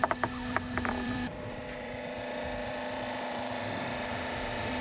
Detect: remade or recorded remade